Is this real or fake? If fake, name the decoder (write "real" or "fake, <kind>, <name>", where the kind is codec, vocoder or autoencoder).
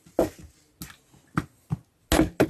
real